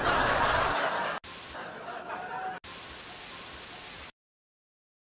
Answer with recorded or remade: recorded